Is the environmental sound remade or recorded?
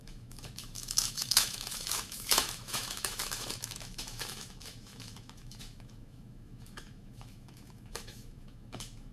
remade